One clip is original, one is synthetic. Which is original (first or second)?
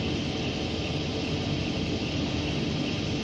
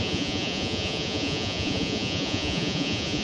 first